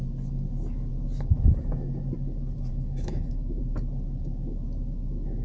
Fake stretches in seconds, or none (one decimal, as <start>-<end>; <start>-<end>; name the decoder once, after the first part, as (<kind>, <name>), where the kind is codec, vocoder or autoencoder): 2.7-3.6 (autoencoder, DAC-VAE)